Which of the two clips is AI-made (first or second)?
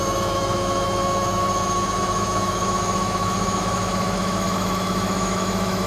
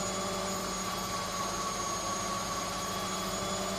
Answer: first